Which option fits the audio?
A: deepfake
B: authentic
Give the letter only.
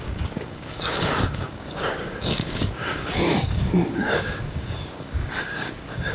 A